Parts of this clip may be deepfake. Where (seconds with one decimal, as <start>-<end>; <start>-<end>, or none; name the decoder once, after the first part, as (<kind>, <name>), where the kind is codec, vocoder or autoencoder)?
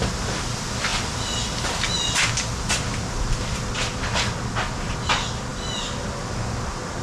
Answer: none